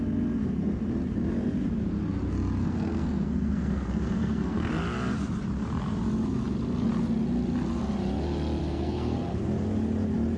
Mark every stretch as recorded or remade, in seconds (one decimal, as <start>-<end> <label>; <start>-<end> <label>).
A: 0.0-2.6 recorded; 2.6-4.7 remade; 4.7-8.6 recorded; 8.6-9.4 remade; 9.4-10.4 recorded